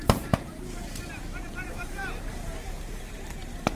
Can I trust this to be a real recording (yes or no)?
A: no